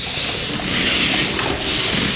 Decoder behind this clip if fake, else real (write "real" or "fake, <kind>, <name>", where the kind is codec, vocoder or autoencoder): real